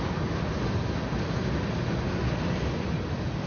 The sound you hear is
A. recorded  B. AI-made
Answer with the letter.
A